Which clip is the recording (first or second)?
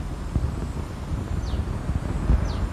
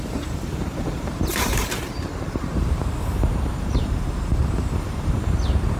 first